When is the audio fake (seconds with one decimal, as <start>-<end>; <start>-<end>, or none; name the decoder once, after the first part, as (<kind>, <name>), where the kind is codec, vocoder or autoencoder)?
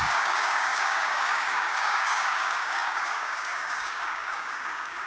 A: 0.0-5.1 (codec, DAC)